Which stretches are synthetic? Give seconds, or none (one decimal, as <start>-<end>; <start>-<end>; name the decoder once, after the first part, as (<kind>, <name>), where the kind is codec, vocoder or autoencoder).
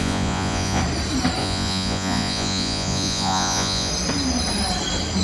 0.0-0.8 (vocoder, Vocos); 1.4-3.9